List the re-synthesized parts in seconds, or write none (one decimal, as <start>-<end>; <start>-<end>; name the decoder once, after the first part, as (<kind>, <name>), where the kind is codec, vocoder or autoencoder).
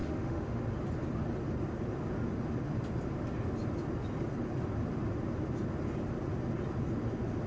0.0-0.6 (autoencoder, DAC-VAE)